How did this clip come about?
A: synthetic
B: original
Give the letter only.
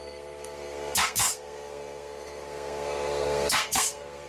A